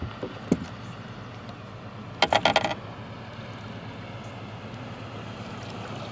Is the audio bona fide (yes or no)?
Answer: yes